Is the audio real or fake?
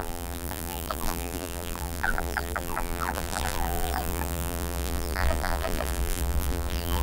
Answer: fake